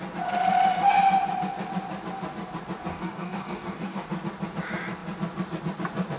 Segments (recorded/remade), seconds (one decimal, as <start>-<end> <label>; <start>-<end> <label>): 0.0-2.9 recorded; 2.9-4.1 remade; 4.1-6.2 recorded